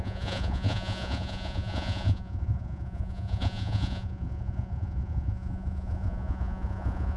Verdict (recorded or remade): remade